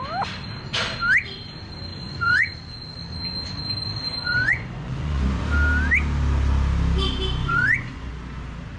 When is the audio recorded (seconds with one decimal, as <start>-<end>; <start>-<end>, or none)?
0.0-1.9; 2.5-4.2; 5.2-7.4; 8.1-8.8